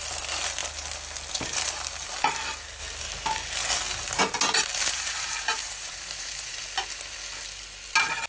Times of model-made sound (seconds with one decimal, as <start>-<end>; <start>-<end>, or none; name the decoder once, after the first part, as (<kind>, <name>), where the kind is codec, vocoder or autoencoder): 4.7-6.6 (vocoder, BigVGAN v2)